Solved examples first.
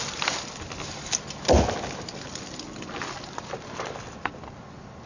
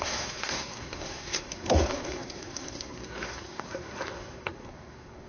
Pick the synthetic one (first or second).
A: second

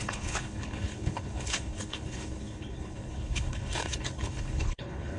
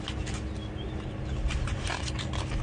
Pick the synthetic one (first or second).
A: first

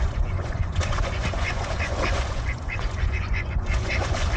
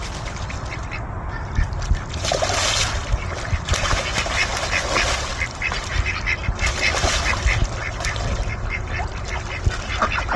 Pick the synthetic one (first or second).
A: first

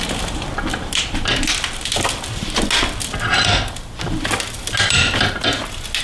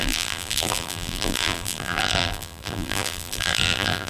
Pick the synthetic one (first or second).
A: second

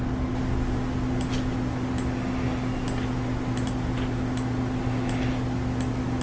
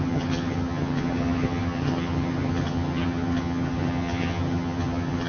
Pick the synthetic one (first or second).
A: second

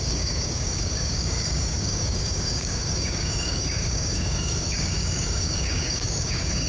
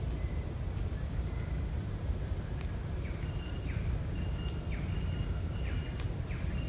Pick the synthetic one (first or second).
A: first